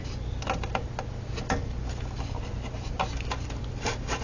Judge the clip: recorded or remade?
recorded